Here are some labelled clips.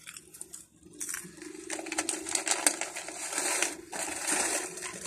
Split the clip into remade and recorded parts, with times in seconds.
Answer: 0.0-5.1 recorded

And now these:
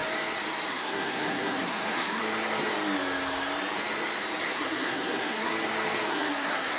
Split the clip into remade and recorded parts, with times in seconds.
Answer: 0.0-0.7 recorded; 0.7-2.2 remade; 2.2-4.4 recorded; 4.4-5.5 remade; 5.5-6.1 recorded; 6.1-6.8 remade

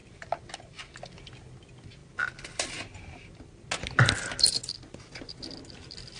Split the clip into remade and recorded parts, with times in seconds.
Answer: 0.0-0.6 remade; 0.6-6.2 recorded

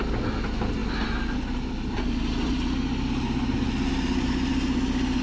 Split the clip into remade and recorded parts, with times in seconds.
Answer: 0.0-5.2 recorded